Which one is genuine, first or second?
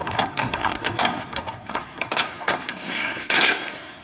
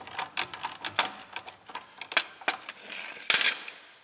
second